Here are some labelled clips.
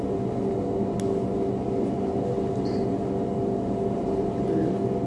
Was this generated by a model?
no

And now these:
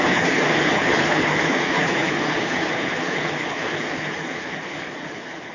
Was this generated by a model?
yes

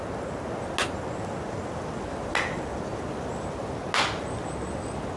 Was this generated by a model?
no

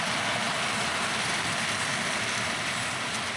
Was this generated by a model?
no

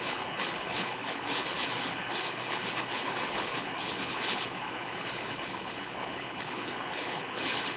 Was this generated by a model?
yes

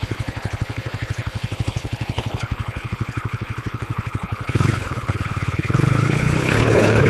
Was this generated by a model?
yes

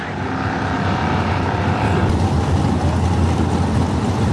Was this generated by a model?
no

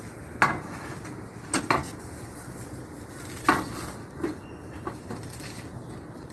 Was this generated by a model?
no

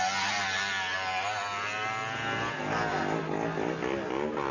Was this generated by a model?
no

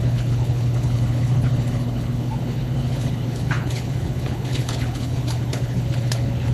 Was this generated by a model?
yes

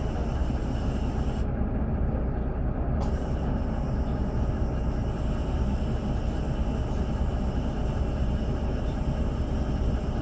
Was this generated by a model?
no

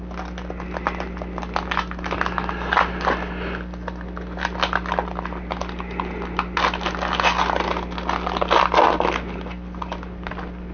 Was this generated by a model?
no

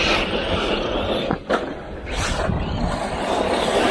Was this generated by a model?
no